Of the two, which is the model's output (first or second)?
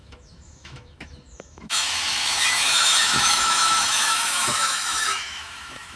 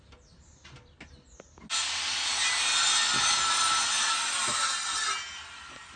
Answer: first